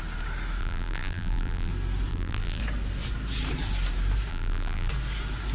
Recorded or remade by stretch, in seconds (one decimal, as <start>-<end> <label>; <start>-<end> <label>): 0.0-0.6 recorded; 0.6-1.7 remade; 1.7-2.1 recorded; 2.1-2.6 remade; 2.6-4.3 recorded; 4.3-4.9 remade; 4.9-5.5 recorded